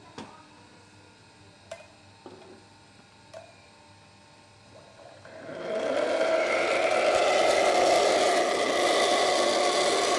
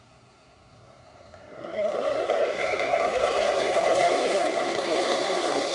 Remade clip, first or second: second